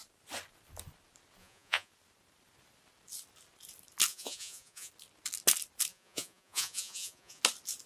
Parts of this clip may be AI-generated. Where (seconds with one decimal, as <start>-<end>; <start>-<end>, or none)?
1.4-1.9; 4.1-4.9; 5.9-7.4